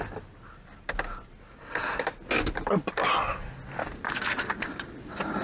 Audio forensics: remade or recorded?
recorded